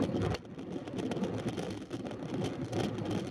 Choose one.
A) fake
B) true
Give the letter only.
B